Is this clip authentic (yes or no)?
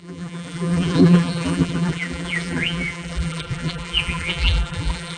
no